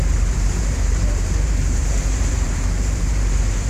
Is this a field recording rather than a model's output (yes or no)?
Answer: no